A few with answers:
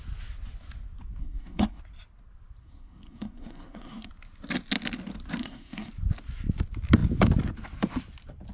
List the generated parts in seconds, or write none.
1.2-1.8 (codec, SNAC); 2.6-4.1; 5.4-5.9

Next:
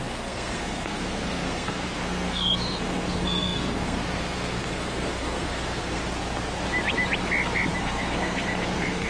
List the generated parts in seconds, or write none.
0.0-6.0 (codec, SNAC); 7.8-9.1

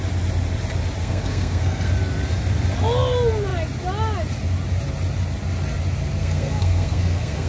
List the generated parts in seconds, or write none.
1.0-1.9 (codec, SNAC); 6.2-7.5

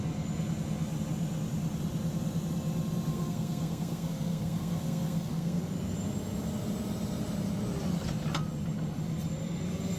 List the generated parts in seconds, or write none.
3.1-5.6 (codec, SNAC)